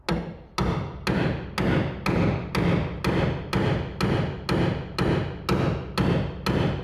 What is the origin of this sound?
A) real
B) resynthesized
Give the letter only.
A